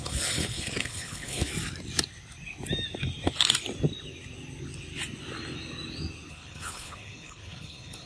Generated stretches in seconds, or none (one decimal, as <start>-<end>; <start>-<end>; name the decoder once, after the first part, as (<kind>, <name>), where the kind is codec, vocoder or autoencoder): 0.0-1.5 (codec, HILCodec); 6.3-8.1